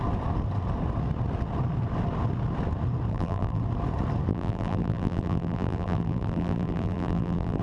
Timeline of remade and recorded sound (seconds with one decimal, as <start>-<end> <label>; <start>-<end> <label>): 0.0-3.1 recorded; 3.1-3.6 remade; 3.6-4.3 recorded; 4.3-7.6 remade

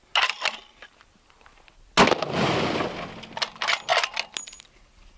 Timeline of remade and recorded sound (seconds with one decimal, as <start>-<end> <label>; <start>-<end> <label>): 0.0-5.2 recorded